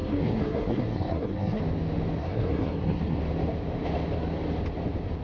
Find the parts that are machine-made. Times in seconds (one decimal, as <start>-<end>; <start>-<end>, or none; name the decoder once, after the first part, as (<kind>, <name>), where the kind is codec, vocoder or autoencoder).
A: 0.0-1.6 (codec, SNAC); 2.2-3.2